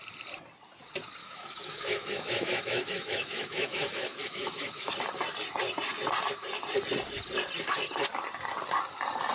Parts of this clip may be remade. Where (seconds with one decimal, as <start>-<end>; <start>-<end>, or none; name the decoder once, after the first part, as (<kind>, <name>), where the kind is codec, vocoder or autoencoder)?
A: 1.2-4.9 (autoencoder, DAC-VAE)